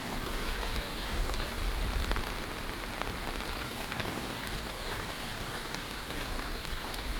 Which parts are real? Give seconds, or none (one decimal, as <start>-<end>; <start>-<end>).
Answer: 1.6-3.5